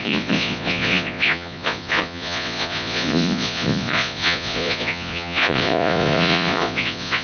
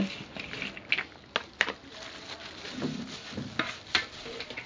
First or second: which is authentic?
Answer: second